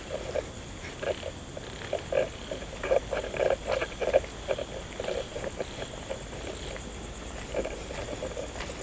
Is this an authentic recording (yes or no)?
yes